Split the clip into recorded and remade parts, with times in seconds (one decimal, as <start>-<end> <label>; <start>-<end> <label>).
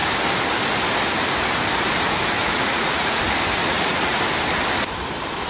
0.0-2.4 recorded; 2.4-3.2 remade; 3.2-3.6 recorded; 3.6-4.2 remade; 4.2-5.5 recorded